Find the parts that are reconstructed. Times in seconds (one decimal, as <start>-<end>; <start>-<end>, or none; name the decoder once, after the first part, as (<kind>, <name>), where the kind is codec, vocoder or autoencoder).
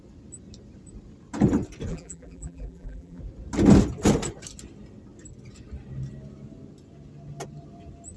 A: 1.9-3.2 (vocoder, BigVGAN v2)